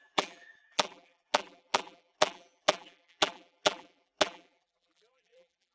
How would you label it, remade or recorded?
remade